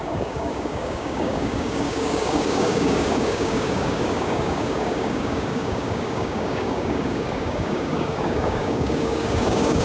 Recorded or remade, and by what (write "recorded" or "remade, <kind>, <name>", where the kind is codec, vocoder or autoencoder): remade, codec, DAC